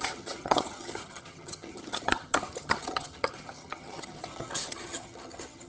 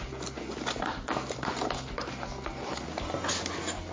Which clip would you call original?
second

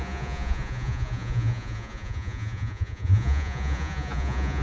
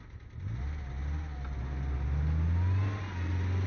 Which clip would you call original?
second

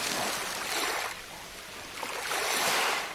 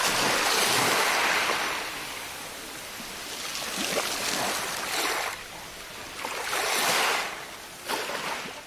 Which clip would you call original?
second